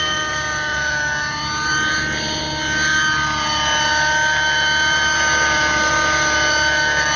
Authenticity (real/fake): real